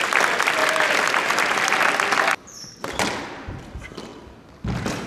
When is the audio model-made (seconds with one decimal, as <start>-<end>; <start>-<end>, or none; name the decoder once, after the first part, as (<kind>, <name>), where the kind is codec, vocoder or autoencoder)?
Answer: none